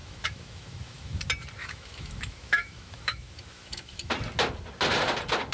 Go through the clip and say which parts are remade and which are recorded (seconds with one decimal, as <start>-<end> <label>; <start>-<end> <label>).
0.0-1.2 remade; 1.2-1.6 recorded; 1.6-4.1 remade; 4.1-5.5 recorded